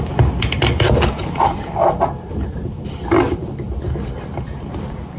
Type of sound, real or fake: real